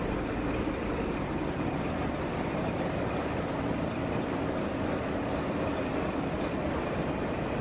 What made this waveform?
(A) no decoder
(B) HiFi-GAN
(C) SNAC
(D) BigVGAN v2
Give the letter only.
D